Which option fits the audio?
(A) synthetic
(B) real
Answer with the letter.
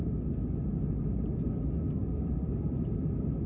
B